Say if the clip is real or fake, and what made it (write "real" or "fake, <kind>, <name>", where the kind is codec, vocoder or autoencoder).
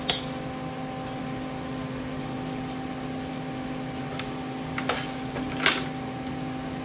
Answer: real